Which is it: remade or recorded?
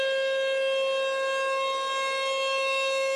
recorded